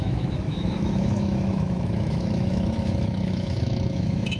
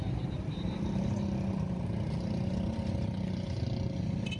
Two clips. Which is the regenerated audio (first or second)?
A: first